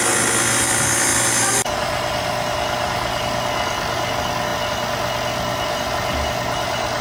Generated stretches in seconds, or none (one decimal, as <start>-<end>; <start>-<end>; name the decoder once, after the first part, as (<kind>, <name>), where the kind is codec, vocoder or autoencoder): none